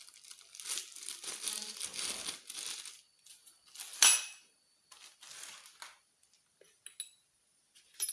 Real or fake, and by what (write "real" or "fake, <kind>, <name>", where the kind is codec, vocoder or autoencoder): real